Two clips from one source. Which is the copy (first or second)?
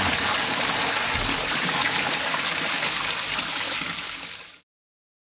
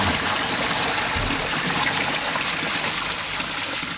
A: first